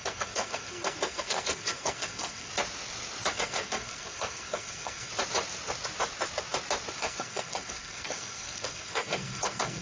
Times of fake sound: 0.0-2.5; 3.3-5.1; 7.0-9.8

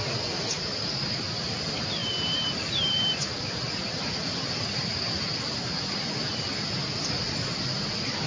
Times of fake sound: none

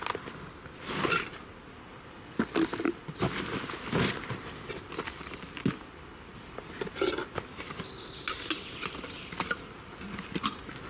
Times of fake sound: none

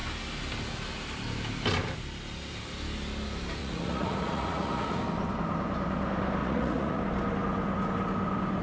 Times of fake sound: 3.6-5.0; 6.4-7.0

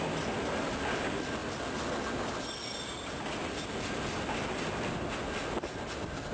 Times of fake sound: 1.4-5.1